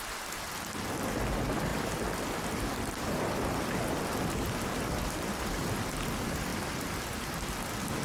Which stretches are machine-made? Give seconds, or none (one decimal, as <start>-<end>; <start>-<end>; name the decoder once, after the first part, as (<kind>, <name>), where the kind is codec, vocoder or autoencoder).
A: 1.7-5.8 (vocoder, BigVGAN v2); 6.5-7.4